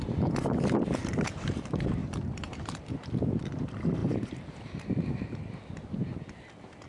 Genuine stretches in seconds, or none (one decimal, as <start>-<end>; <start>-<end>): 0.0-2.0; 2.9-4.0; 5.4-6.9